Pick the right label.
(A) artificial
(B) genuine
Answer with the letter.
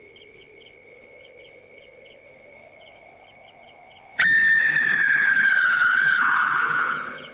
A